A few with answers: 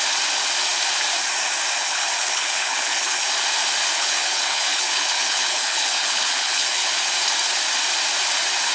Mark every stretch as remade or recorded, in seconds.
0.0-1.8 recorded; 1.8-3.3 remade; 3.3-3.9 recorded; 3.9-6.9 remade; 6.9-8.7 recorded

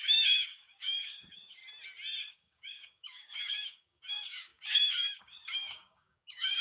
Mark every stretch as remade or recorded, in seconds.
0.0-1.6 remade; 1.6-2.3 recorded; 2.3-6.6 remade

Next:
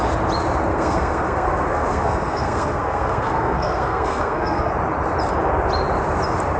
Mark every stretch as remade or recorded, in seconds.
0.0-0.7 recorded; 0.7-4.7 remade; 4.7-6.6 recorded

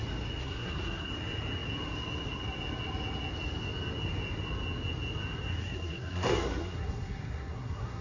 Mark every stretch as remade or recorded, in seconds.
0.0-0.4 recorded; 0.4-1.1 remade; 1.1-5.6 recorded; 5.6-8.0 remade